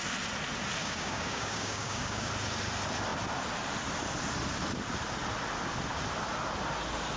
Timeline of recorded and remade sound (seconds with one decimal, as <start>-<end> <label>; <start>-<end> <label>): 0.0-0.8 recorded; 0.8-2.3 remade; 2.3-7.2 recorded